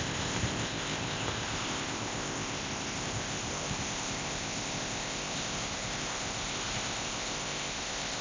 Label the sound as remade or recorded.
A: remade